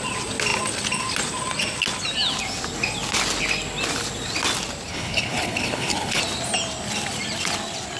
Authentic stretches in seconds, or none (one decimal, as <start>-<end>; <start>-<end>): 0.0-4.9; 6.2-8.0